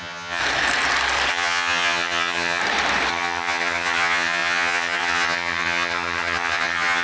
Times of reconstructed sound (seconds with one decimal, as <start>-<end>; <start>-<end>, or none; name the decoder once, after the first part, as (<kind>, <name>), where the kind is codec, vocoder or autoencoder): 0.0-0.4 (vocoder, HiFi-GAN); 1.3-2.6; 3.1-7.0